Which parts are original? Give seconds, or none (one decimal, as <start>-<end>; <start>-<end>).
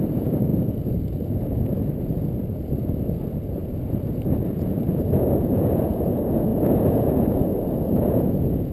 none